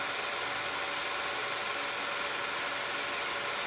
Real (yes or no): yes